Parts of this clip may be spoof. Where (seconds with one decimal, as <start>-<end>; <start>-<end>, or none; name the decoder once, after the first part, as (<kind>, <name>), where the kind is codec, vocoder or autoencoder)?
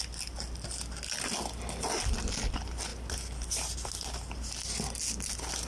none